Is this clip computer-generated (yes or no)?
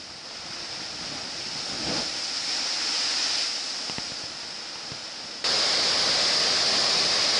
no